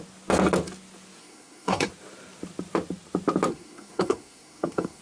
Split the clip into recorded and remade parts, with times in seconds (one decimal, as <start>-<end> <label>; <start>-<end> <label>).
0.0-1.2 recorded; 1.2-1.9 remade; 1.9-3.5 recorded; 3.5-5.0 remade